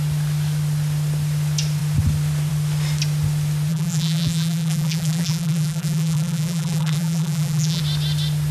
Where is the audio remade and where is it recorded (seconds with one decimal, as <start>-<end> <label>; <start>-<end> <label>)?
0.0-3.7 recorded; 3.7-7.8 remade; 7.8-8.5 recorded